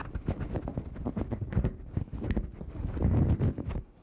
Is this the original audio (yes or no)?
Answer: yes